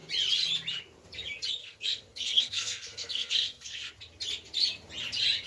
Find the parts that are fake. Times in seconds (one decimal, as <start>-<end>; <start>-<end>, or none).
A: 1.6-3.9